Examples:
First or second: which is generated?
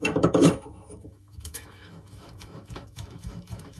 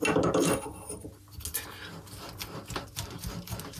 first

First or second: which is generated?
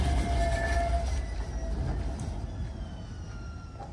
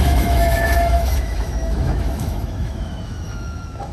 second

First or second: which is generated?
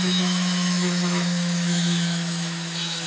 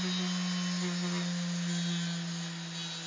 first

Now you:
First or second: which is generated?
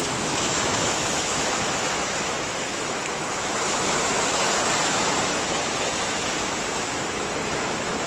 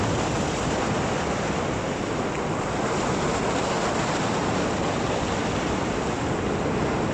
first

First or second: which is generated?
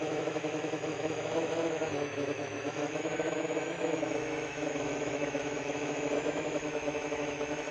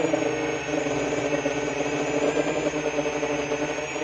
first